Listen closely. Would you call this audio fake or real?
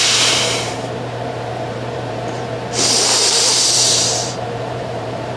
fake